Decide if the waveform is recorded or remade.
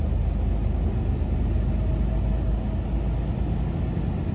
recorded